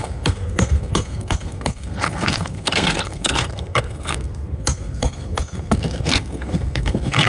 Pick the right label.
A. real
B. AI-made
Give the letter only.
B